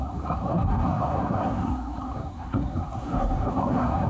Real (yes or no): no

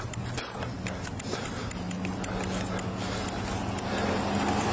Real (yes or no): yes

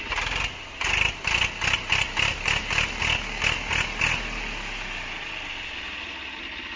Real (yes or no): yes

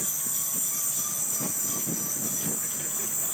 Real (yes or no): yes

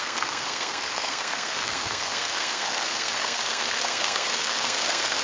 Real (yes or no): no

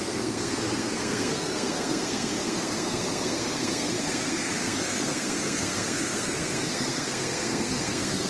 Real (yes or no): no